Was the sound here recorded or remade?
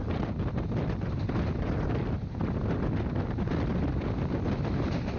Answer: recorded